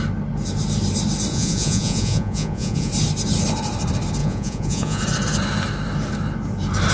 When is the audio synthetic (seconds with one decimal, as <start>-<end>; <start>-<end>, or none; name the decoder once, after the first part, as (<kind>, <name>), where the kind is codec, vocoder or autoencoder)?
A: 1.3-2.9 (vocoder, Vocos); 4.2-5.0